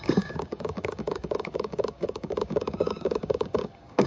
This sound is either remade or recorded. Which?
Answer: remade